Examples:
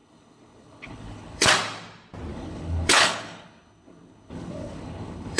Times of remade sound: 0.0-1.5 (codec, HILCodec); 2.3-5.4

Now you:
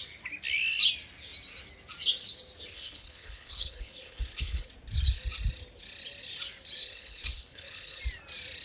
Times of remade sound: 2.7-4.7 (codec, HILCodec); 6.8-8.0